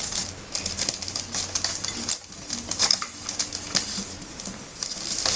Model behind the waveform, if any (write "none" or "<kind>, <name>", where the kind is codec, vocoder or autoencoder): none